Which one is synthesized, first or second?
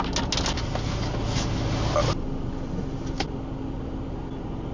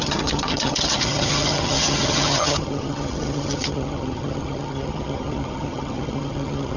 second